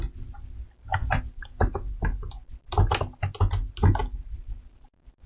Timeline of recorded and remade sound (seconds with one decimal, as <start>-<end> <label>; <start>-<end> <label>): 0.0-5.3 recorded